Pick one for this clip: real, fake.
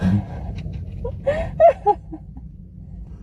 fake